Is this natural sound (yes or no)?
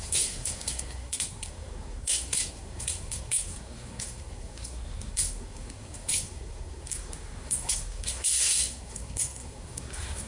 no